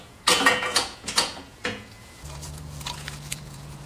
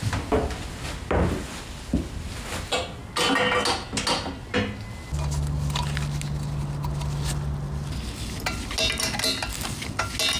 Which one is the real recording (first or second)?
second